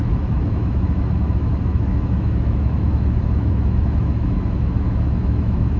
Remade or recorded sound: remade